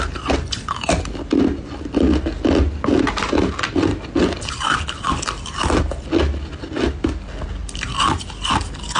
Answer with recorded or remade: recorded